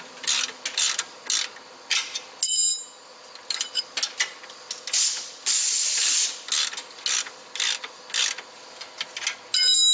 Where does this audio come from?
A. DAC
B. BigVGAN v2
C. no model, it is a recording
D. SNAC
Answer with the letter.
C